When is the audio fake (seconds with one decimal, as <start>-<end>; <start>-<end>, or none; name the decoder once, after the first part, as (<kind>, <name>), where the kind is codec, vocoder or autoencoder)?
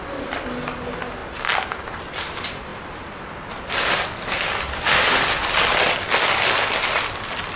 none